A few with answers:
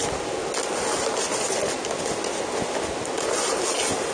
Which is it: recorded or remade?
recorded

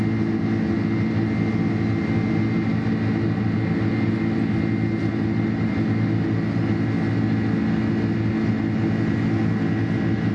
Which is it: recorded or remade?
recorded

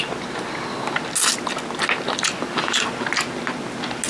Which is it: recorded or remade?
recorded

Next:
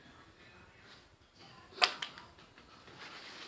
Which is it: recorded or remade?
recorded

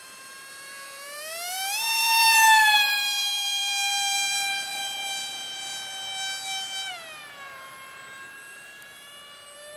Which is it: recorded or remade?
remade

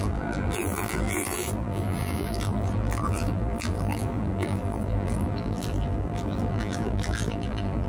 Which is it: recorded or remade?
remade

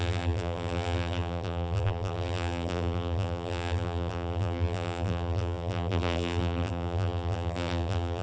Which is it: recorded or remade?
remade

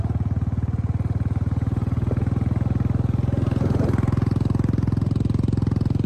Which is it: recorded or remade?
recorded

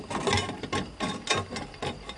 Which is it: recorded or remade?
recorded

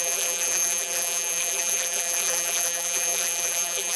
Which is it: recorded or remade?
remade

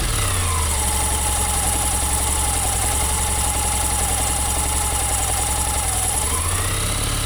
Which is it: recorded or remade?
recorded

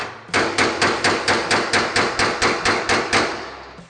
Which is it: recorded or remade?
recorded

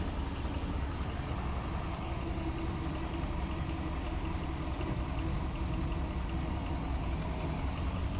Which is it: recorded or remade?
recorded